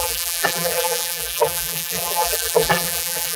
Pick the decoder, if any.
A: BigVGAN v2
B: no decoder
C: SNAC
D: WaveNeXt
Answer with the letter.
A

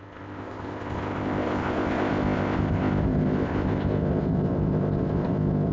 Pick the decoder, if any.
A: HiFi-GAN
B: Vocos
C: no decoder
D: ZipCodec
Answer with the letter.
D